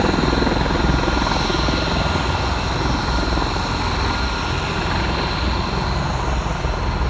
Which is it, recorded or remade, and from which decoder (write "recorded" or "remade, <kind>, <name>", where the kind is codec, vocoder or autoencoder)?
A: recorded